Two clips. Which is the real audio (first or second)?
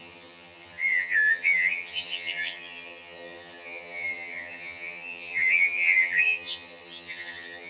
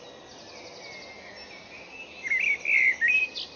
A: second